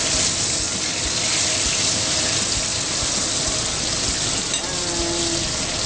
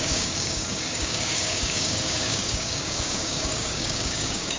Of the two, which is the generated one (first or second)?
second